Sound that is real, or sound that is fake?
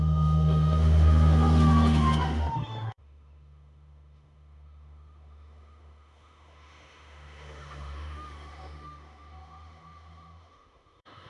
fake